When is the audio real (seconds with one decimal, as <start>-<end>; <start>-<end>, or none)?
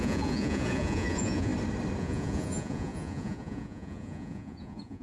1.5-2.0